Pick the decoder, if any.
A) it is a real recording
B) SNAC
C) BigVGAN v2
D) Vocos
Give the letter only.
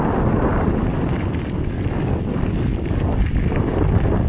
A